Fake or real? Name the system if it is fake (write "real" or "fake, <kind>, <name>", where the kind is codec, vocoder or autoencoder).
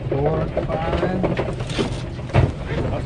real